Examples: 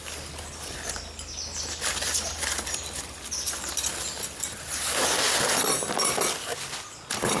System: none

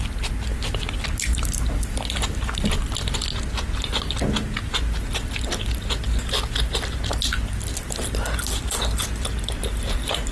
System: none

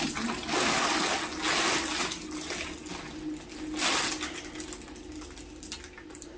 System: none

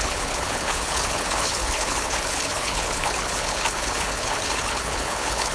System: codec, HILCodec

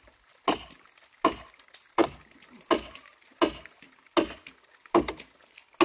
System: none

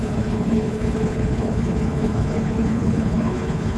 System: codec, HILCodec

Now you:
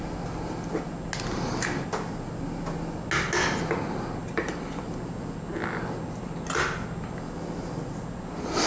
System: none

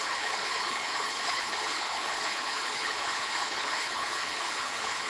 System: codec, HILCodec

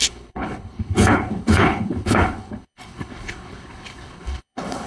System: codec, HILCodec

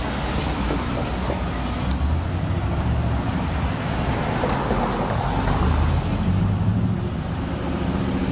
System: none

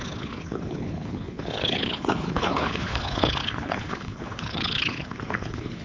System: codec, HILCodec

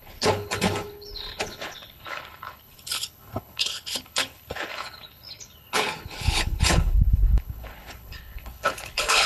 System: codec, HILCodec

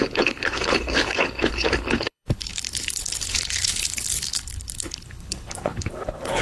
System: codec, HILCodec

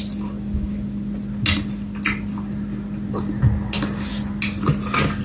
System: none